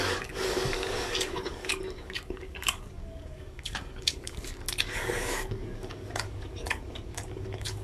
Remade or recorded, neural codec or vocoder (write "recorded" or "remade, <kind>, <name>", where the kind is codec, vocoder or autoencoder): remade, codec, DAC